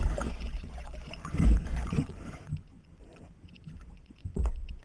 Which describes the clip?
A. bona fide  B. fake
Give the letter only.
B